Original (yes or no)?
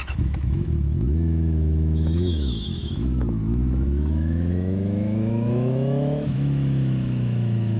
no